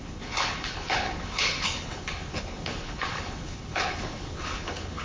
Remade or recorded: remade